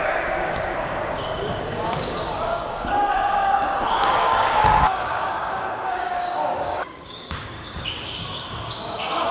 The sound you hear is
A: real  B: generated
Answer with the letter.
B